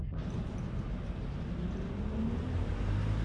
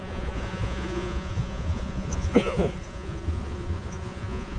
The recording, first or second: first